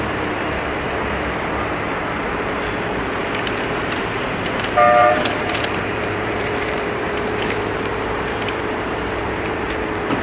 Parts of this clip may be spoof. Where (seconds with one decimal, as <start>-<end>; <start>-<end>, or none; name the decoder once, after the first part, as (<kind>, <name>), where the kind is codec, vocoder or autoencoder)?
0.0-1.0 (vocoder, BigVGAN v2); 4.0-10.2